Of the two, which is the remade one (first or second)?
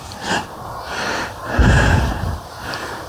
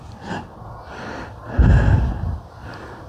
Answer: first